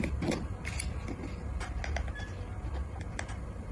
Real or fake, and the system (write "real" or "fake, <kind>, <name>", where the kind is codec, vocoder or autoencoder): real